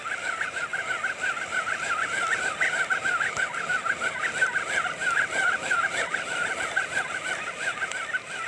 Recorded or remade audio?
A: recorded